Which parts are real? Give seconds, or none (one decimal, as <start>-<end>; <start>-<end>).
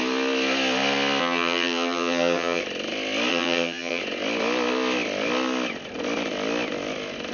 0.0-1.2; 2.6-3.3; 4.0-7.3